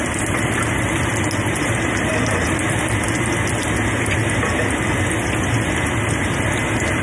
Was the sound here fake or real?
real